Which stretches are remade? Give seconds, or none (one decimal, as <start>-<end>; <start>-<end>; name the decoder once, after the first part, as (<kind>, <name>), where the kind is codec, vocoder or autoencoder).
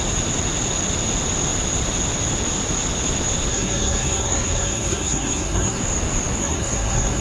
3.5-5.8 (codec, SNAC); 6.4-7.2